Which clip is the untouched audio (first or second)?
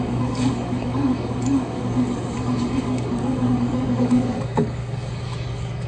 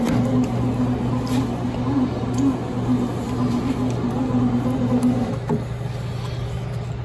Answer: second